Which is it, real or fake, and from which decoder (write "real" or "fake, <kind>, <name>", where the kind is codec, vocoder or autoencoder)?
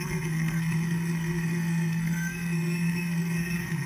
fake, codec, SNAC